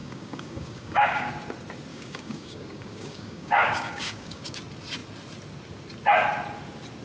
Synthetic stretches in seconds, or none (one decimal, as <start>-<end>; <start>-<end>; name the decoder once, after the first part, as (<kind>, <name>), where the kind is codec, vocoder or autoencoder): 0.0-1.3 (codec, DAC); 1.9-4.6